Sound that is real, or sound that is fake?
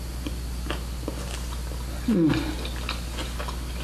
real